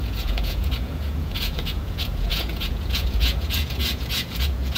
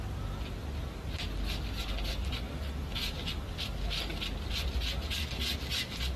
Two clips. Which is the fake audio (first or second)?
first